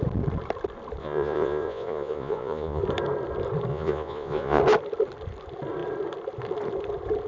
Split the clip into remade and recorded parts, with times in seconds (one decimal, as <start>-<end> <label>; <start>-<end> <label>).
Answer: 0.0-1.0 recorded; 1.0-2.8 remade; 2.8-3.7 recorded; 3.7-4.6 remade; 4.6-7.3 recorded